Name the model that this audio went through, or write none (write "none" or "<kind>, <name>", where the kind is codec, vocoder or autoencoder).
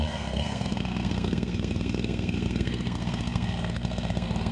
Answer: codec, SNAC